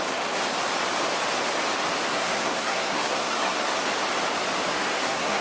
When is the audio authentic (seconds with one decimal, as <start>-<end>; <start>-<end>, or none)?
0.0-2.1; 3.8-4.7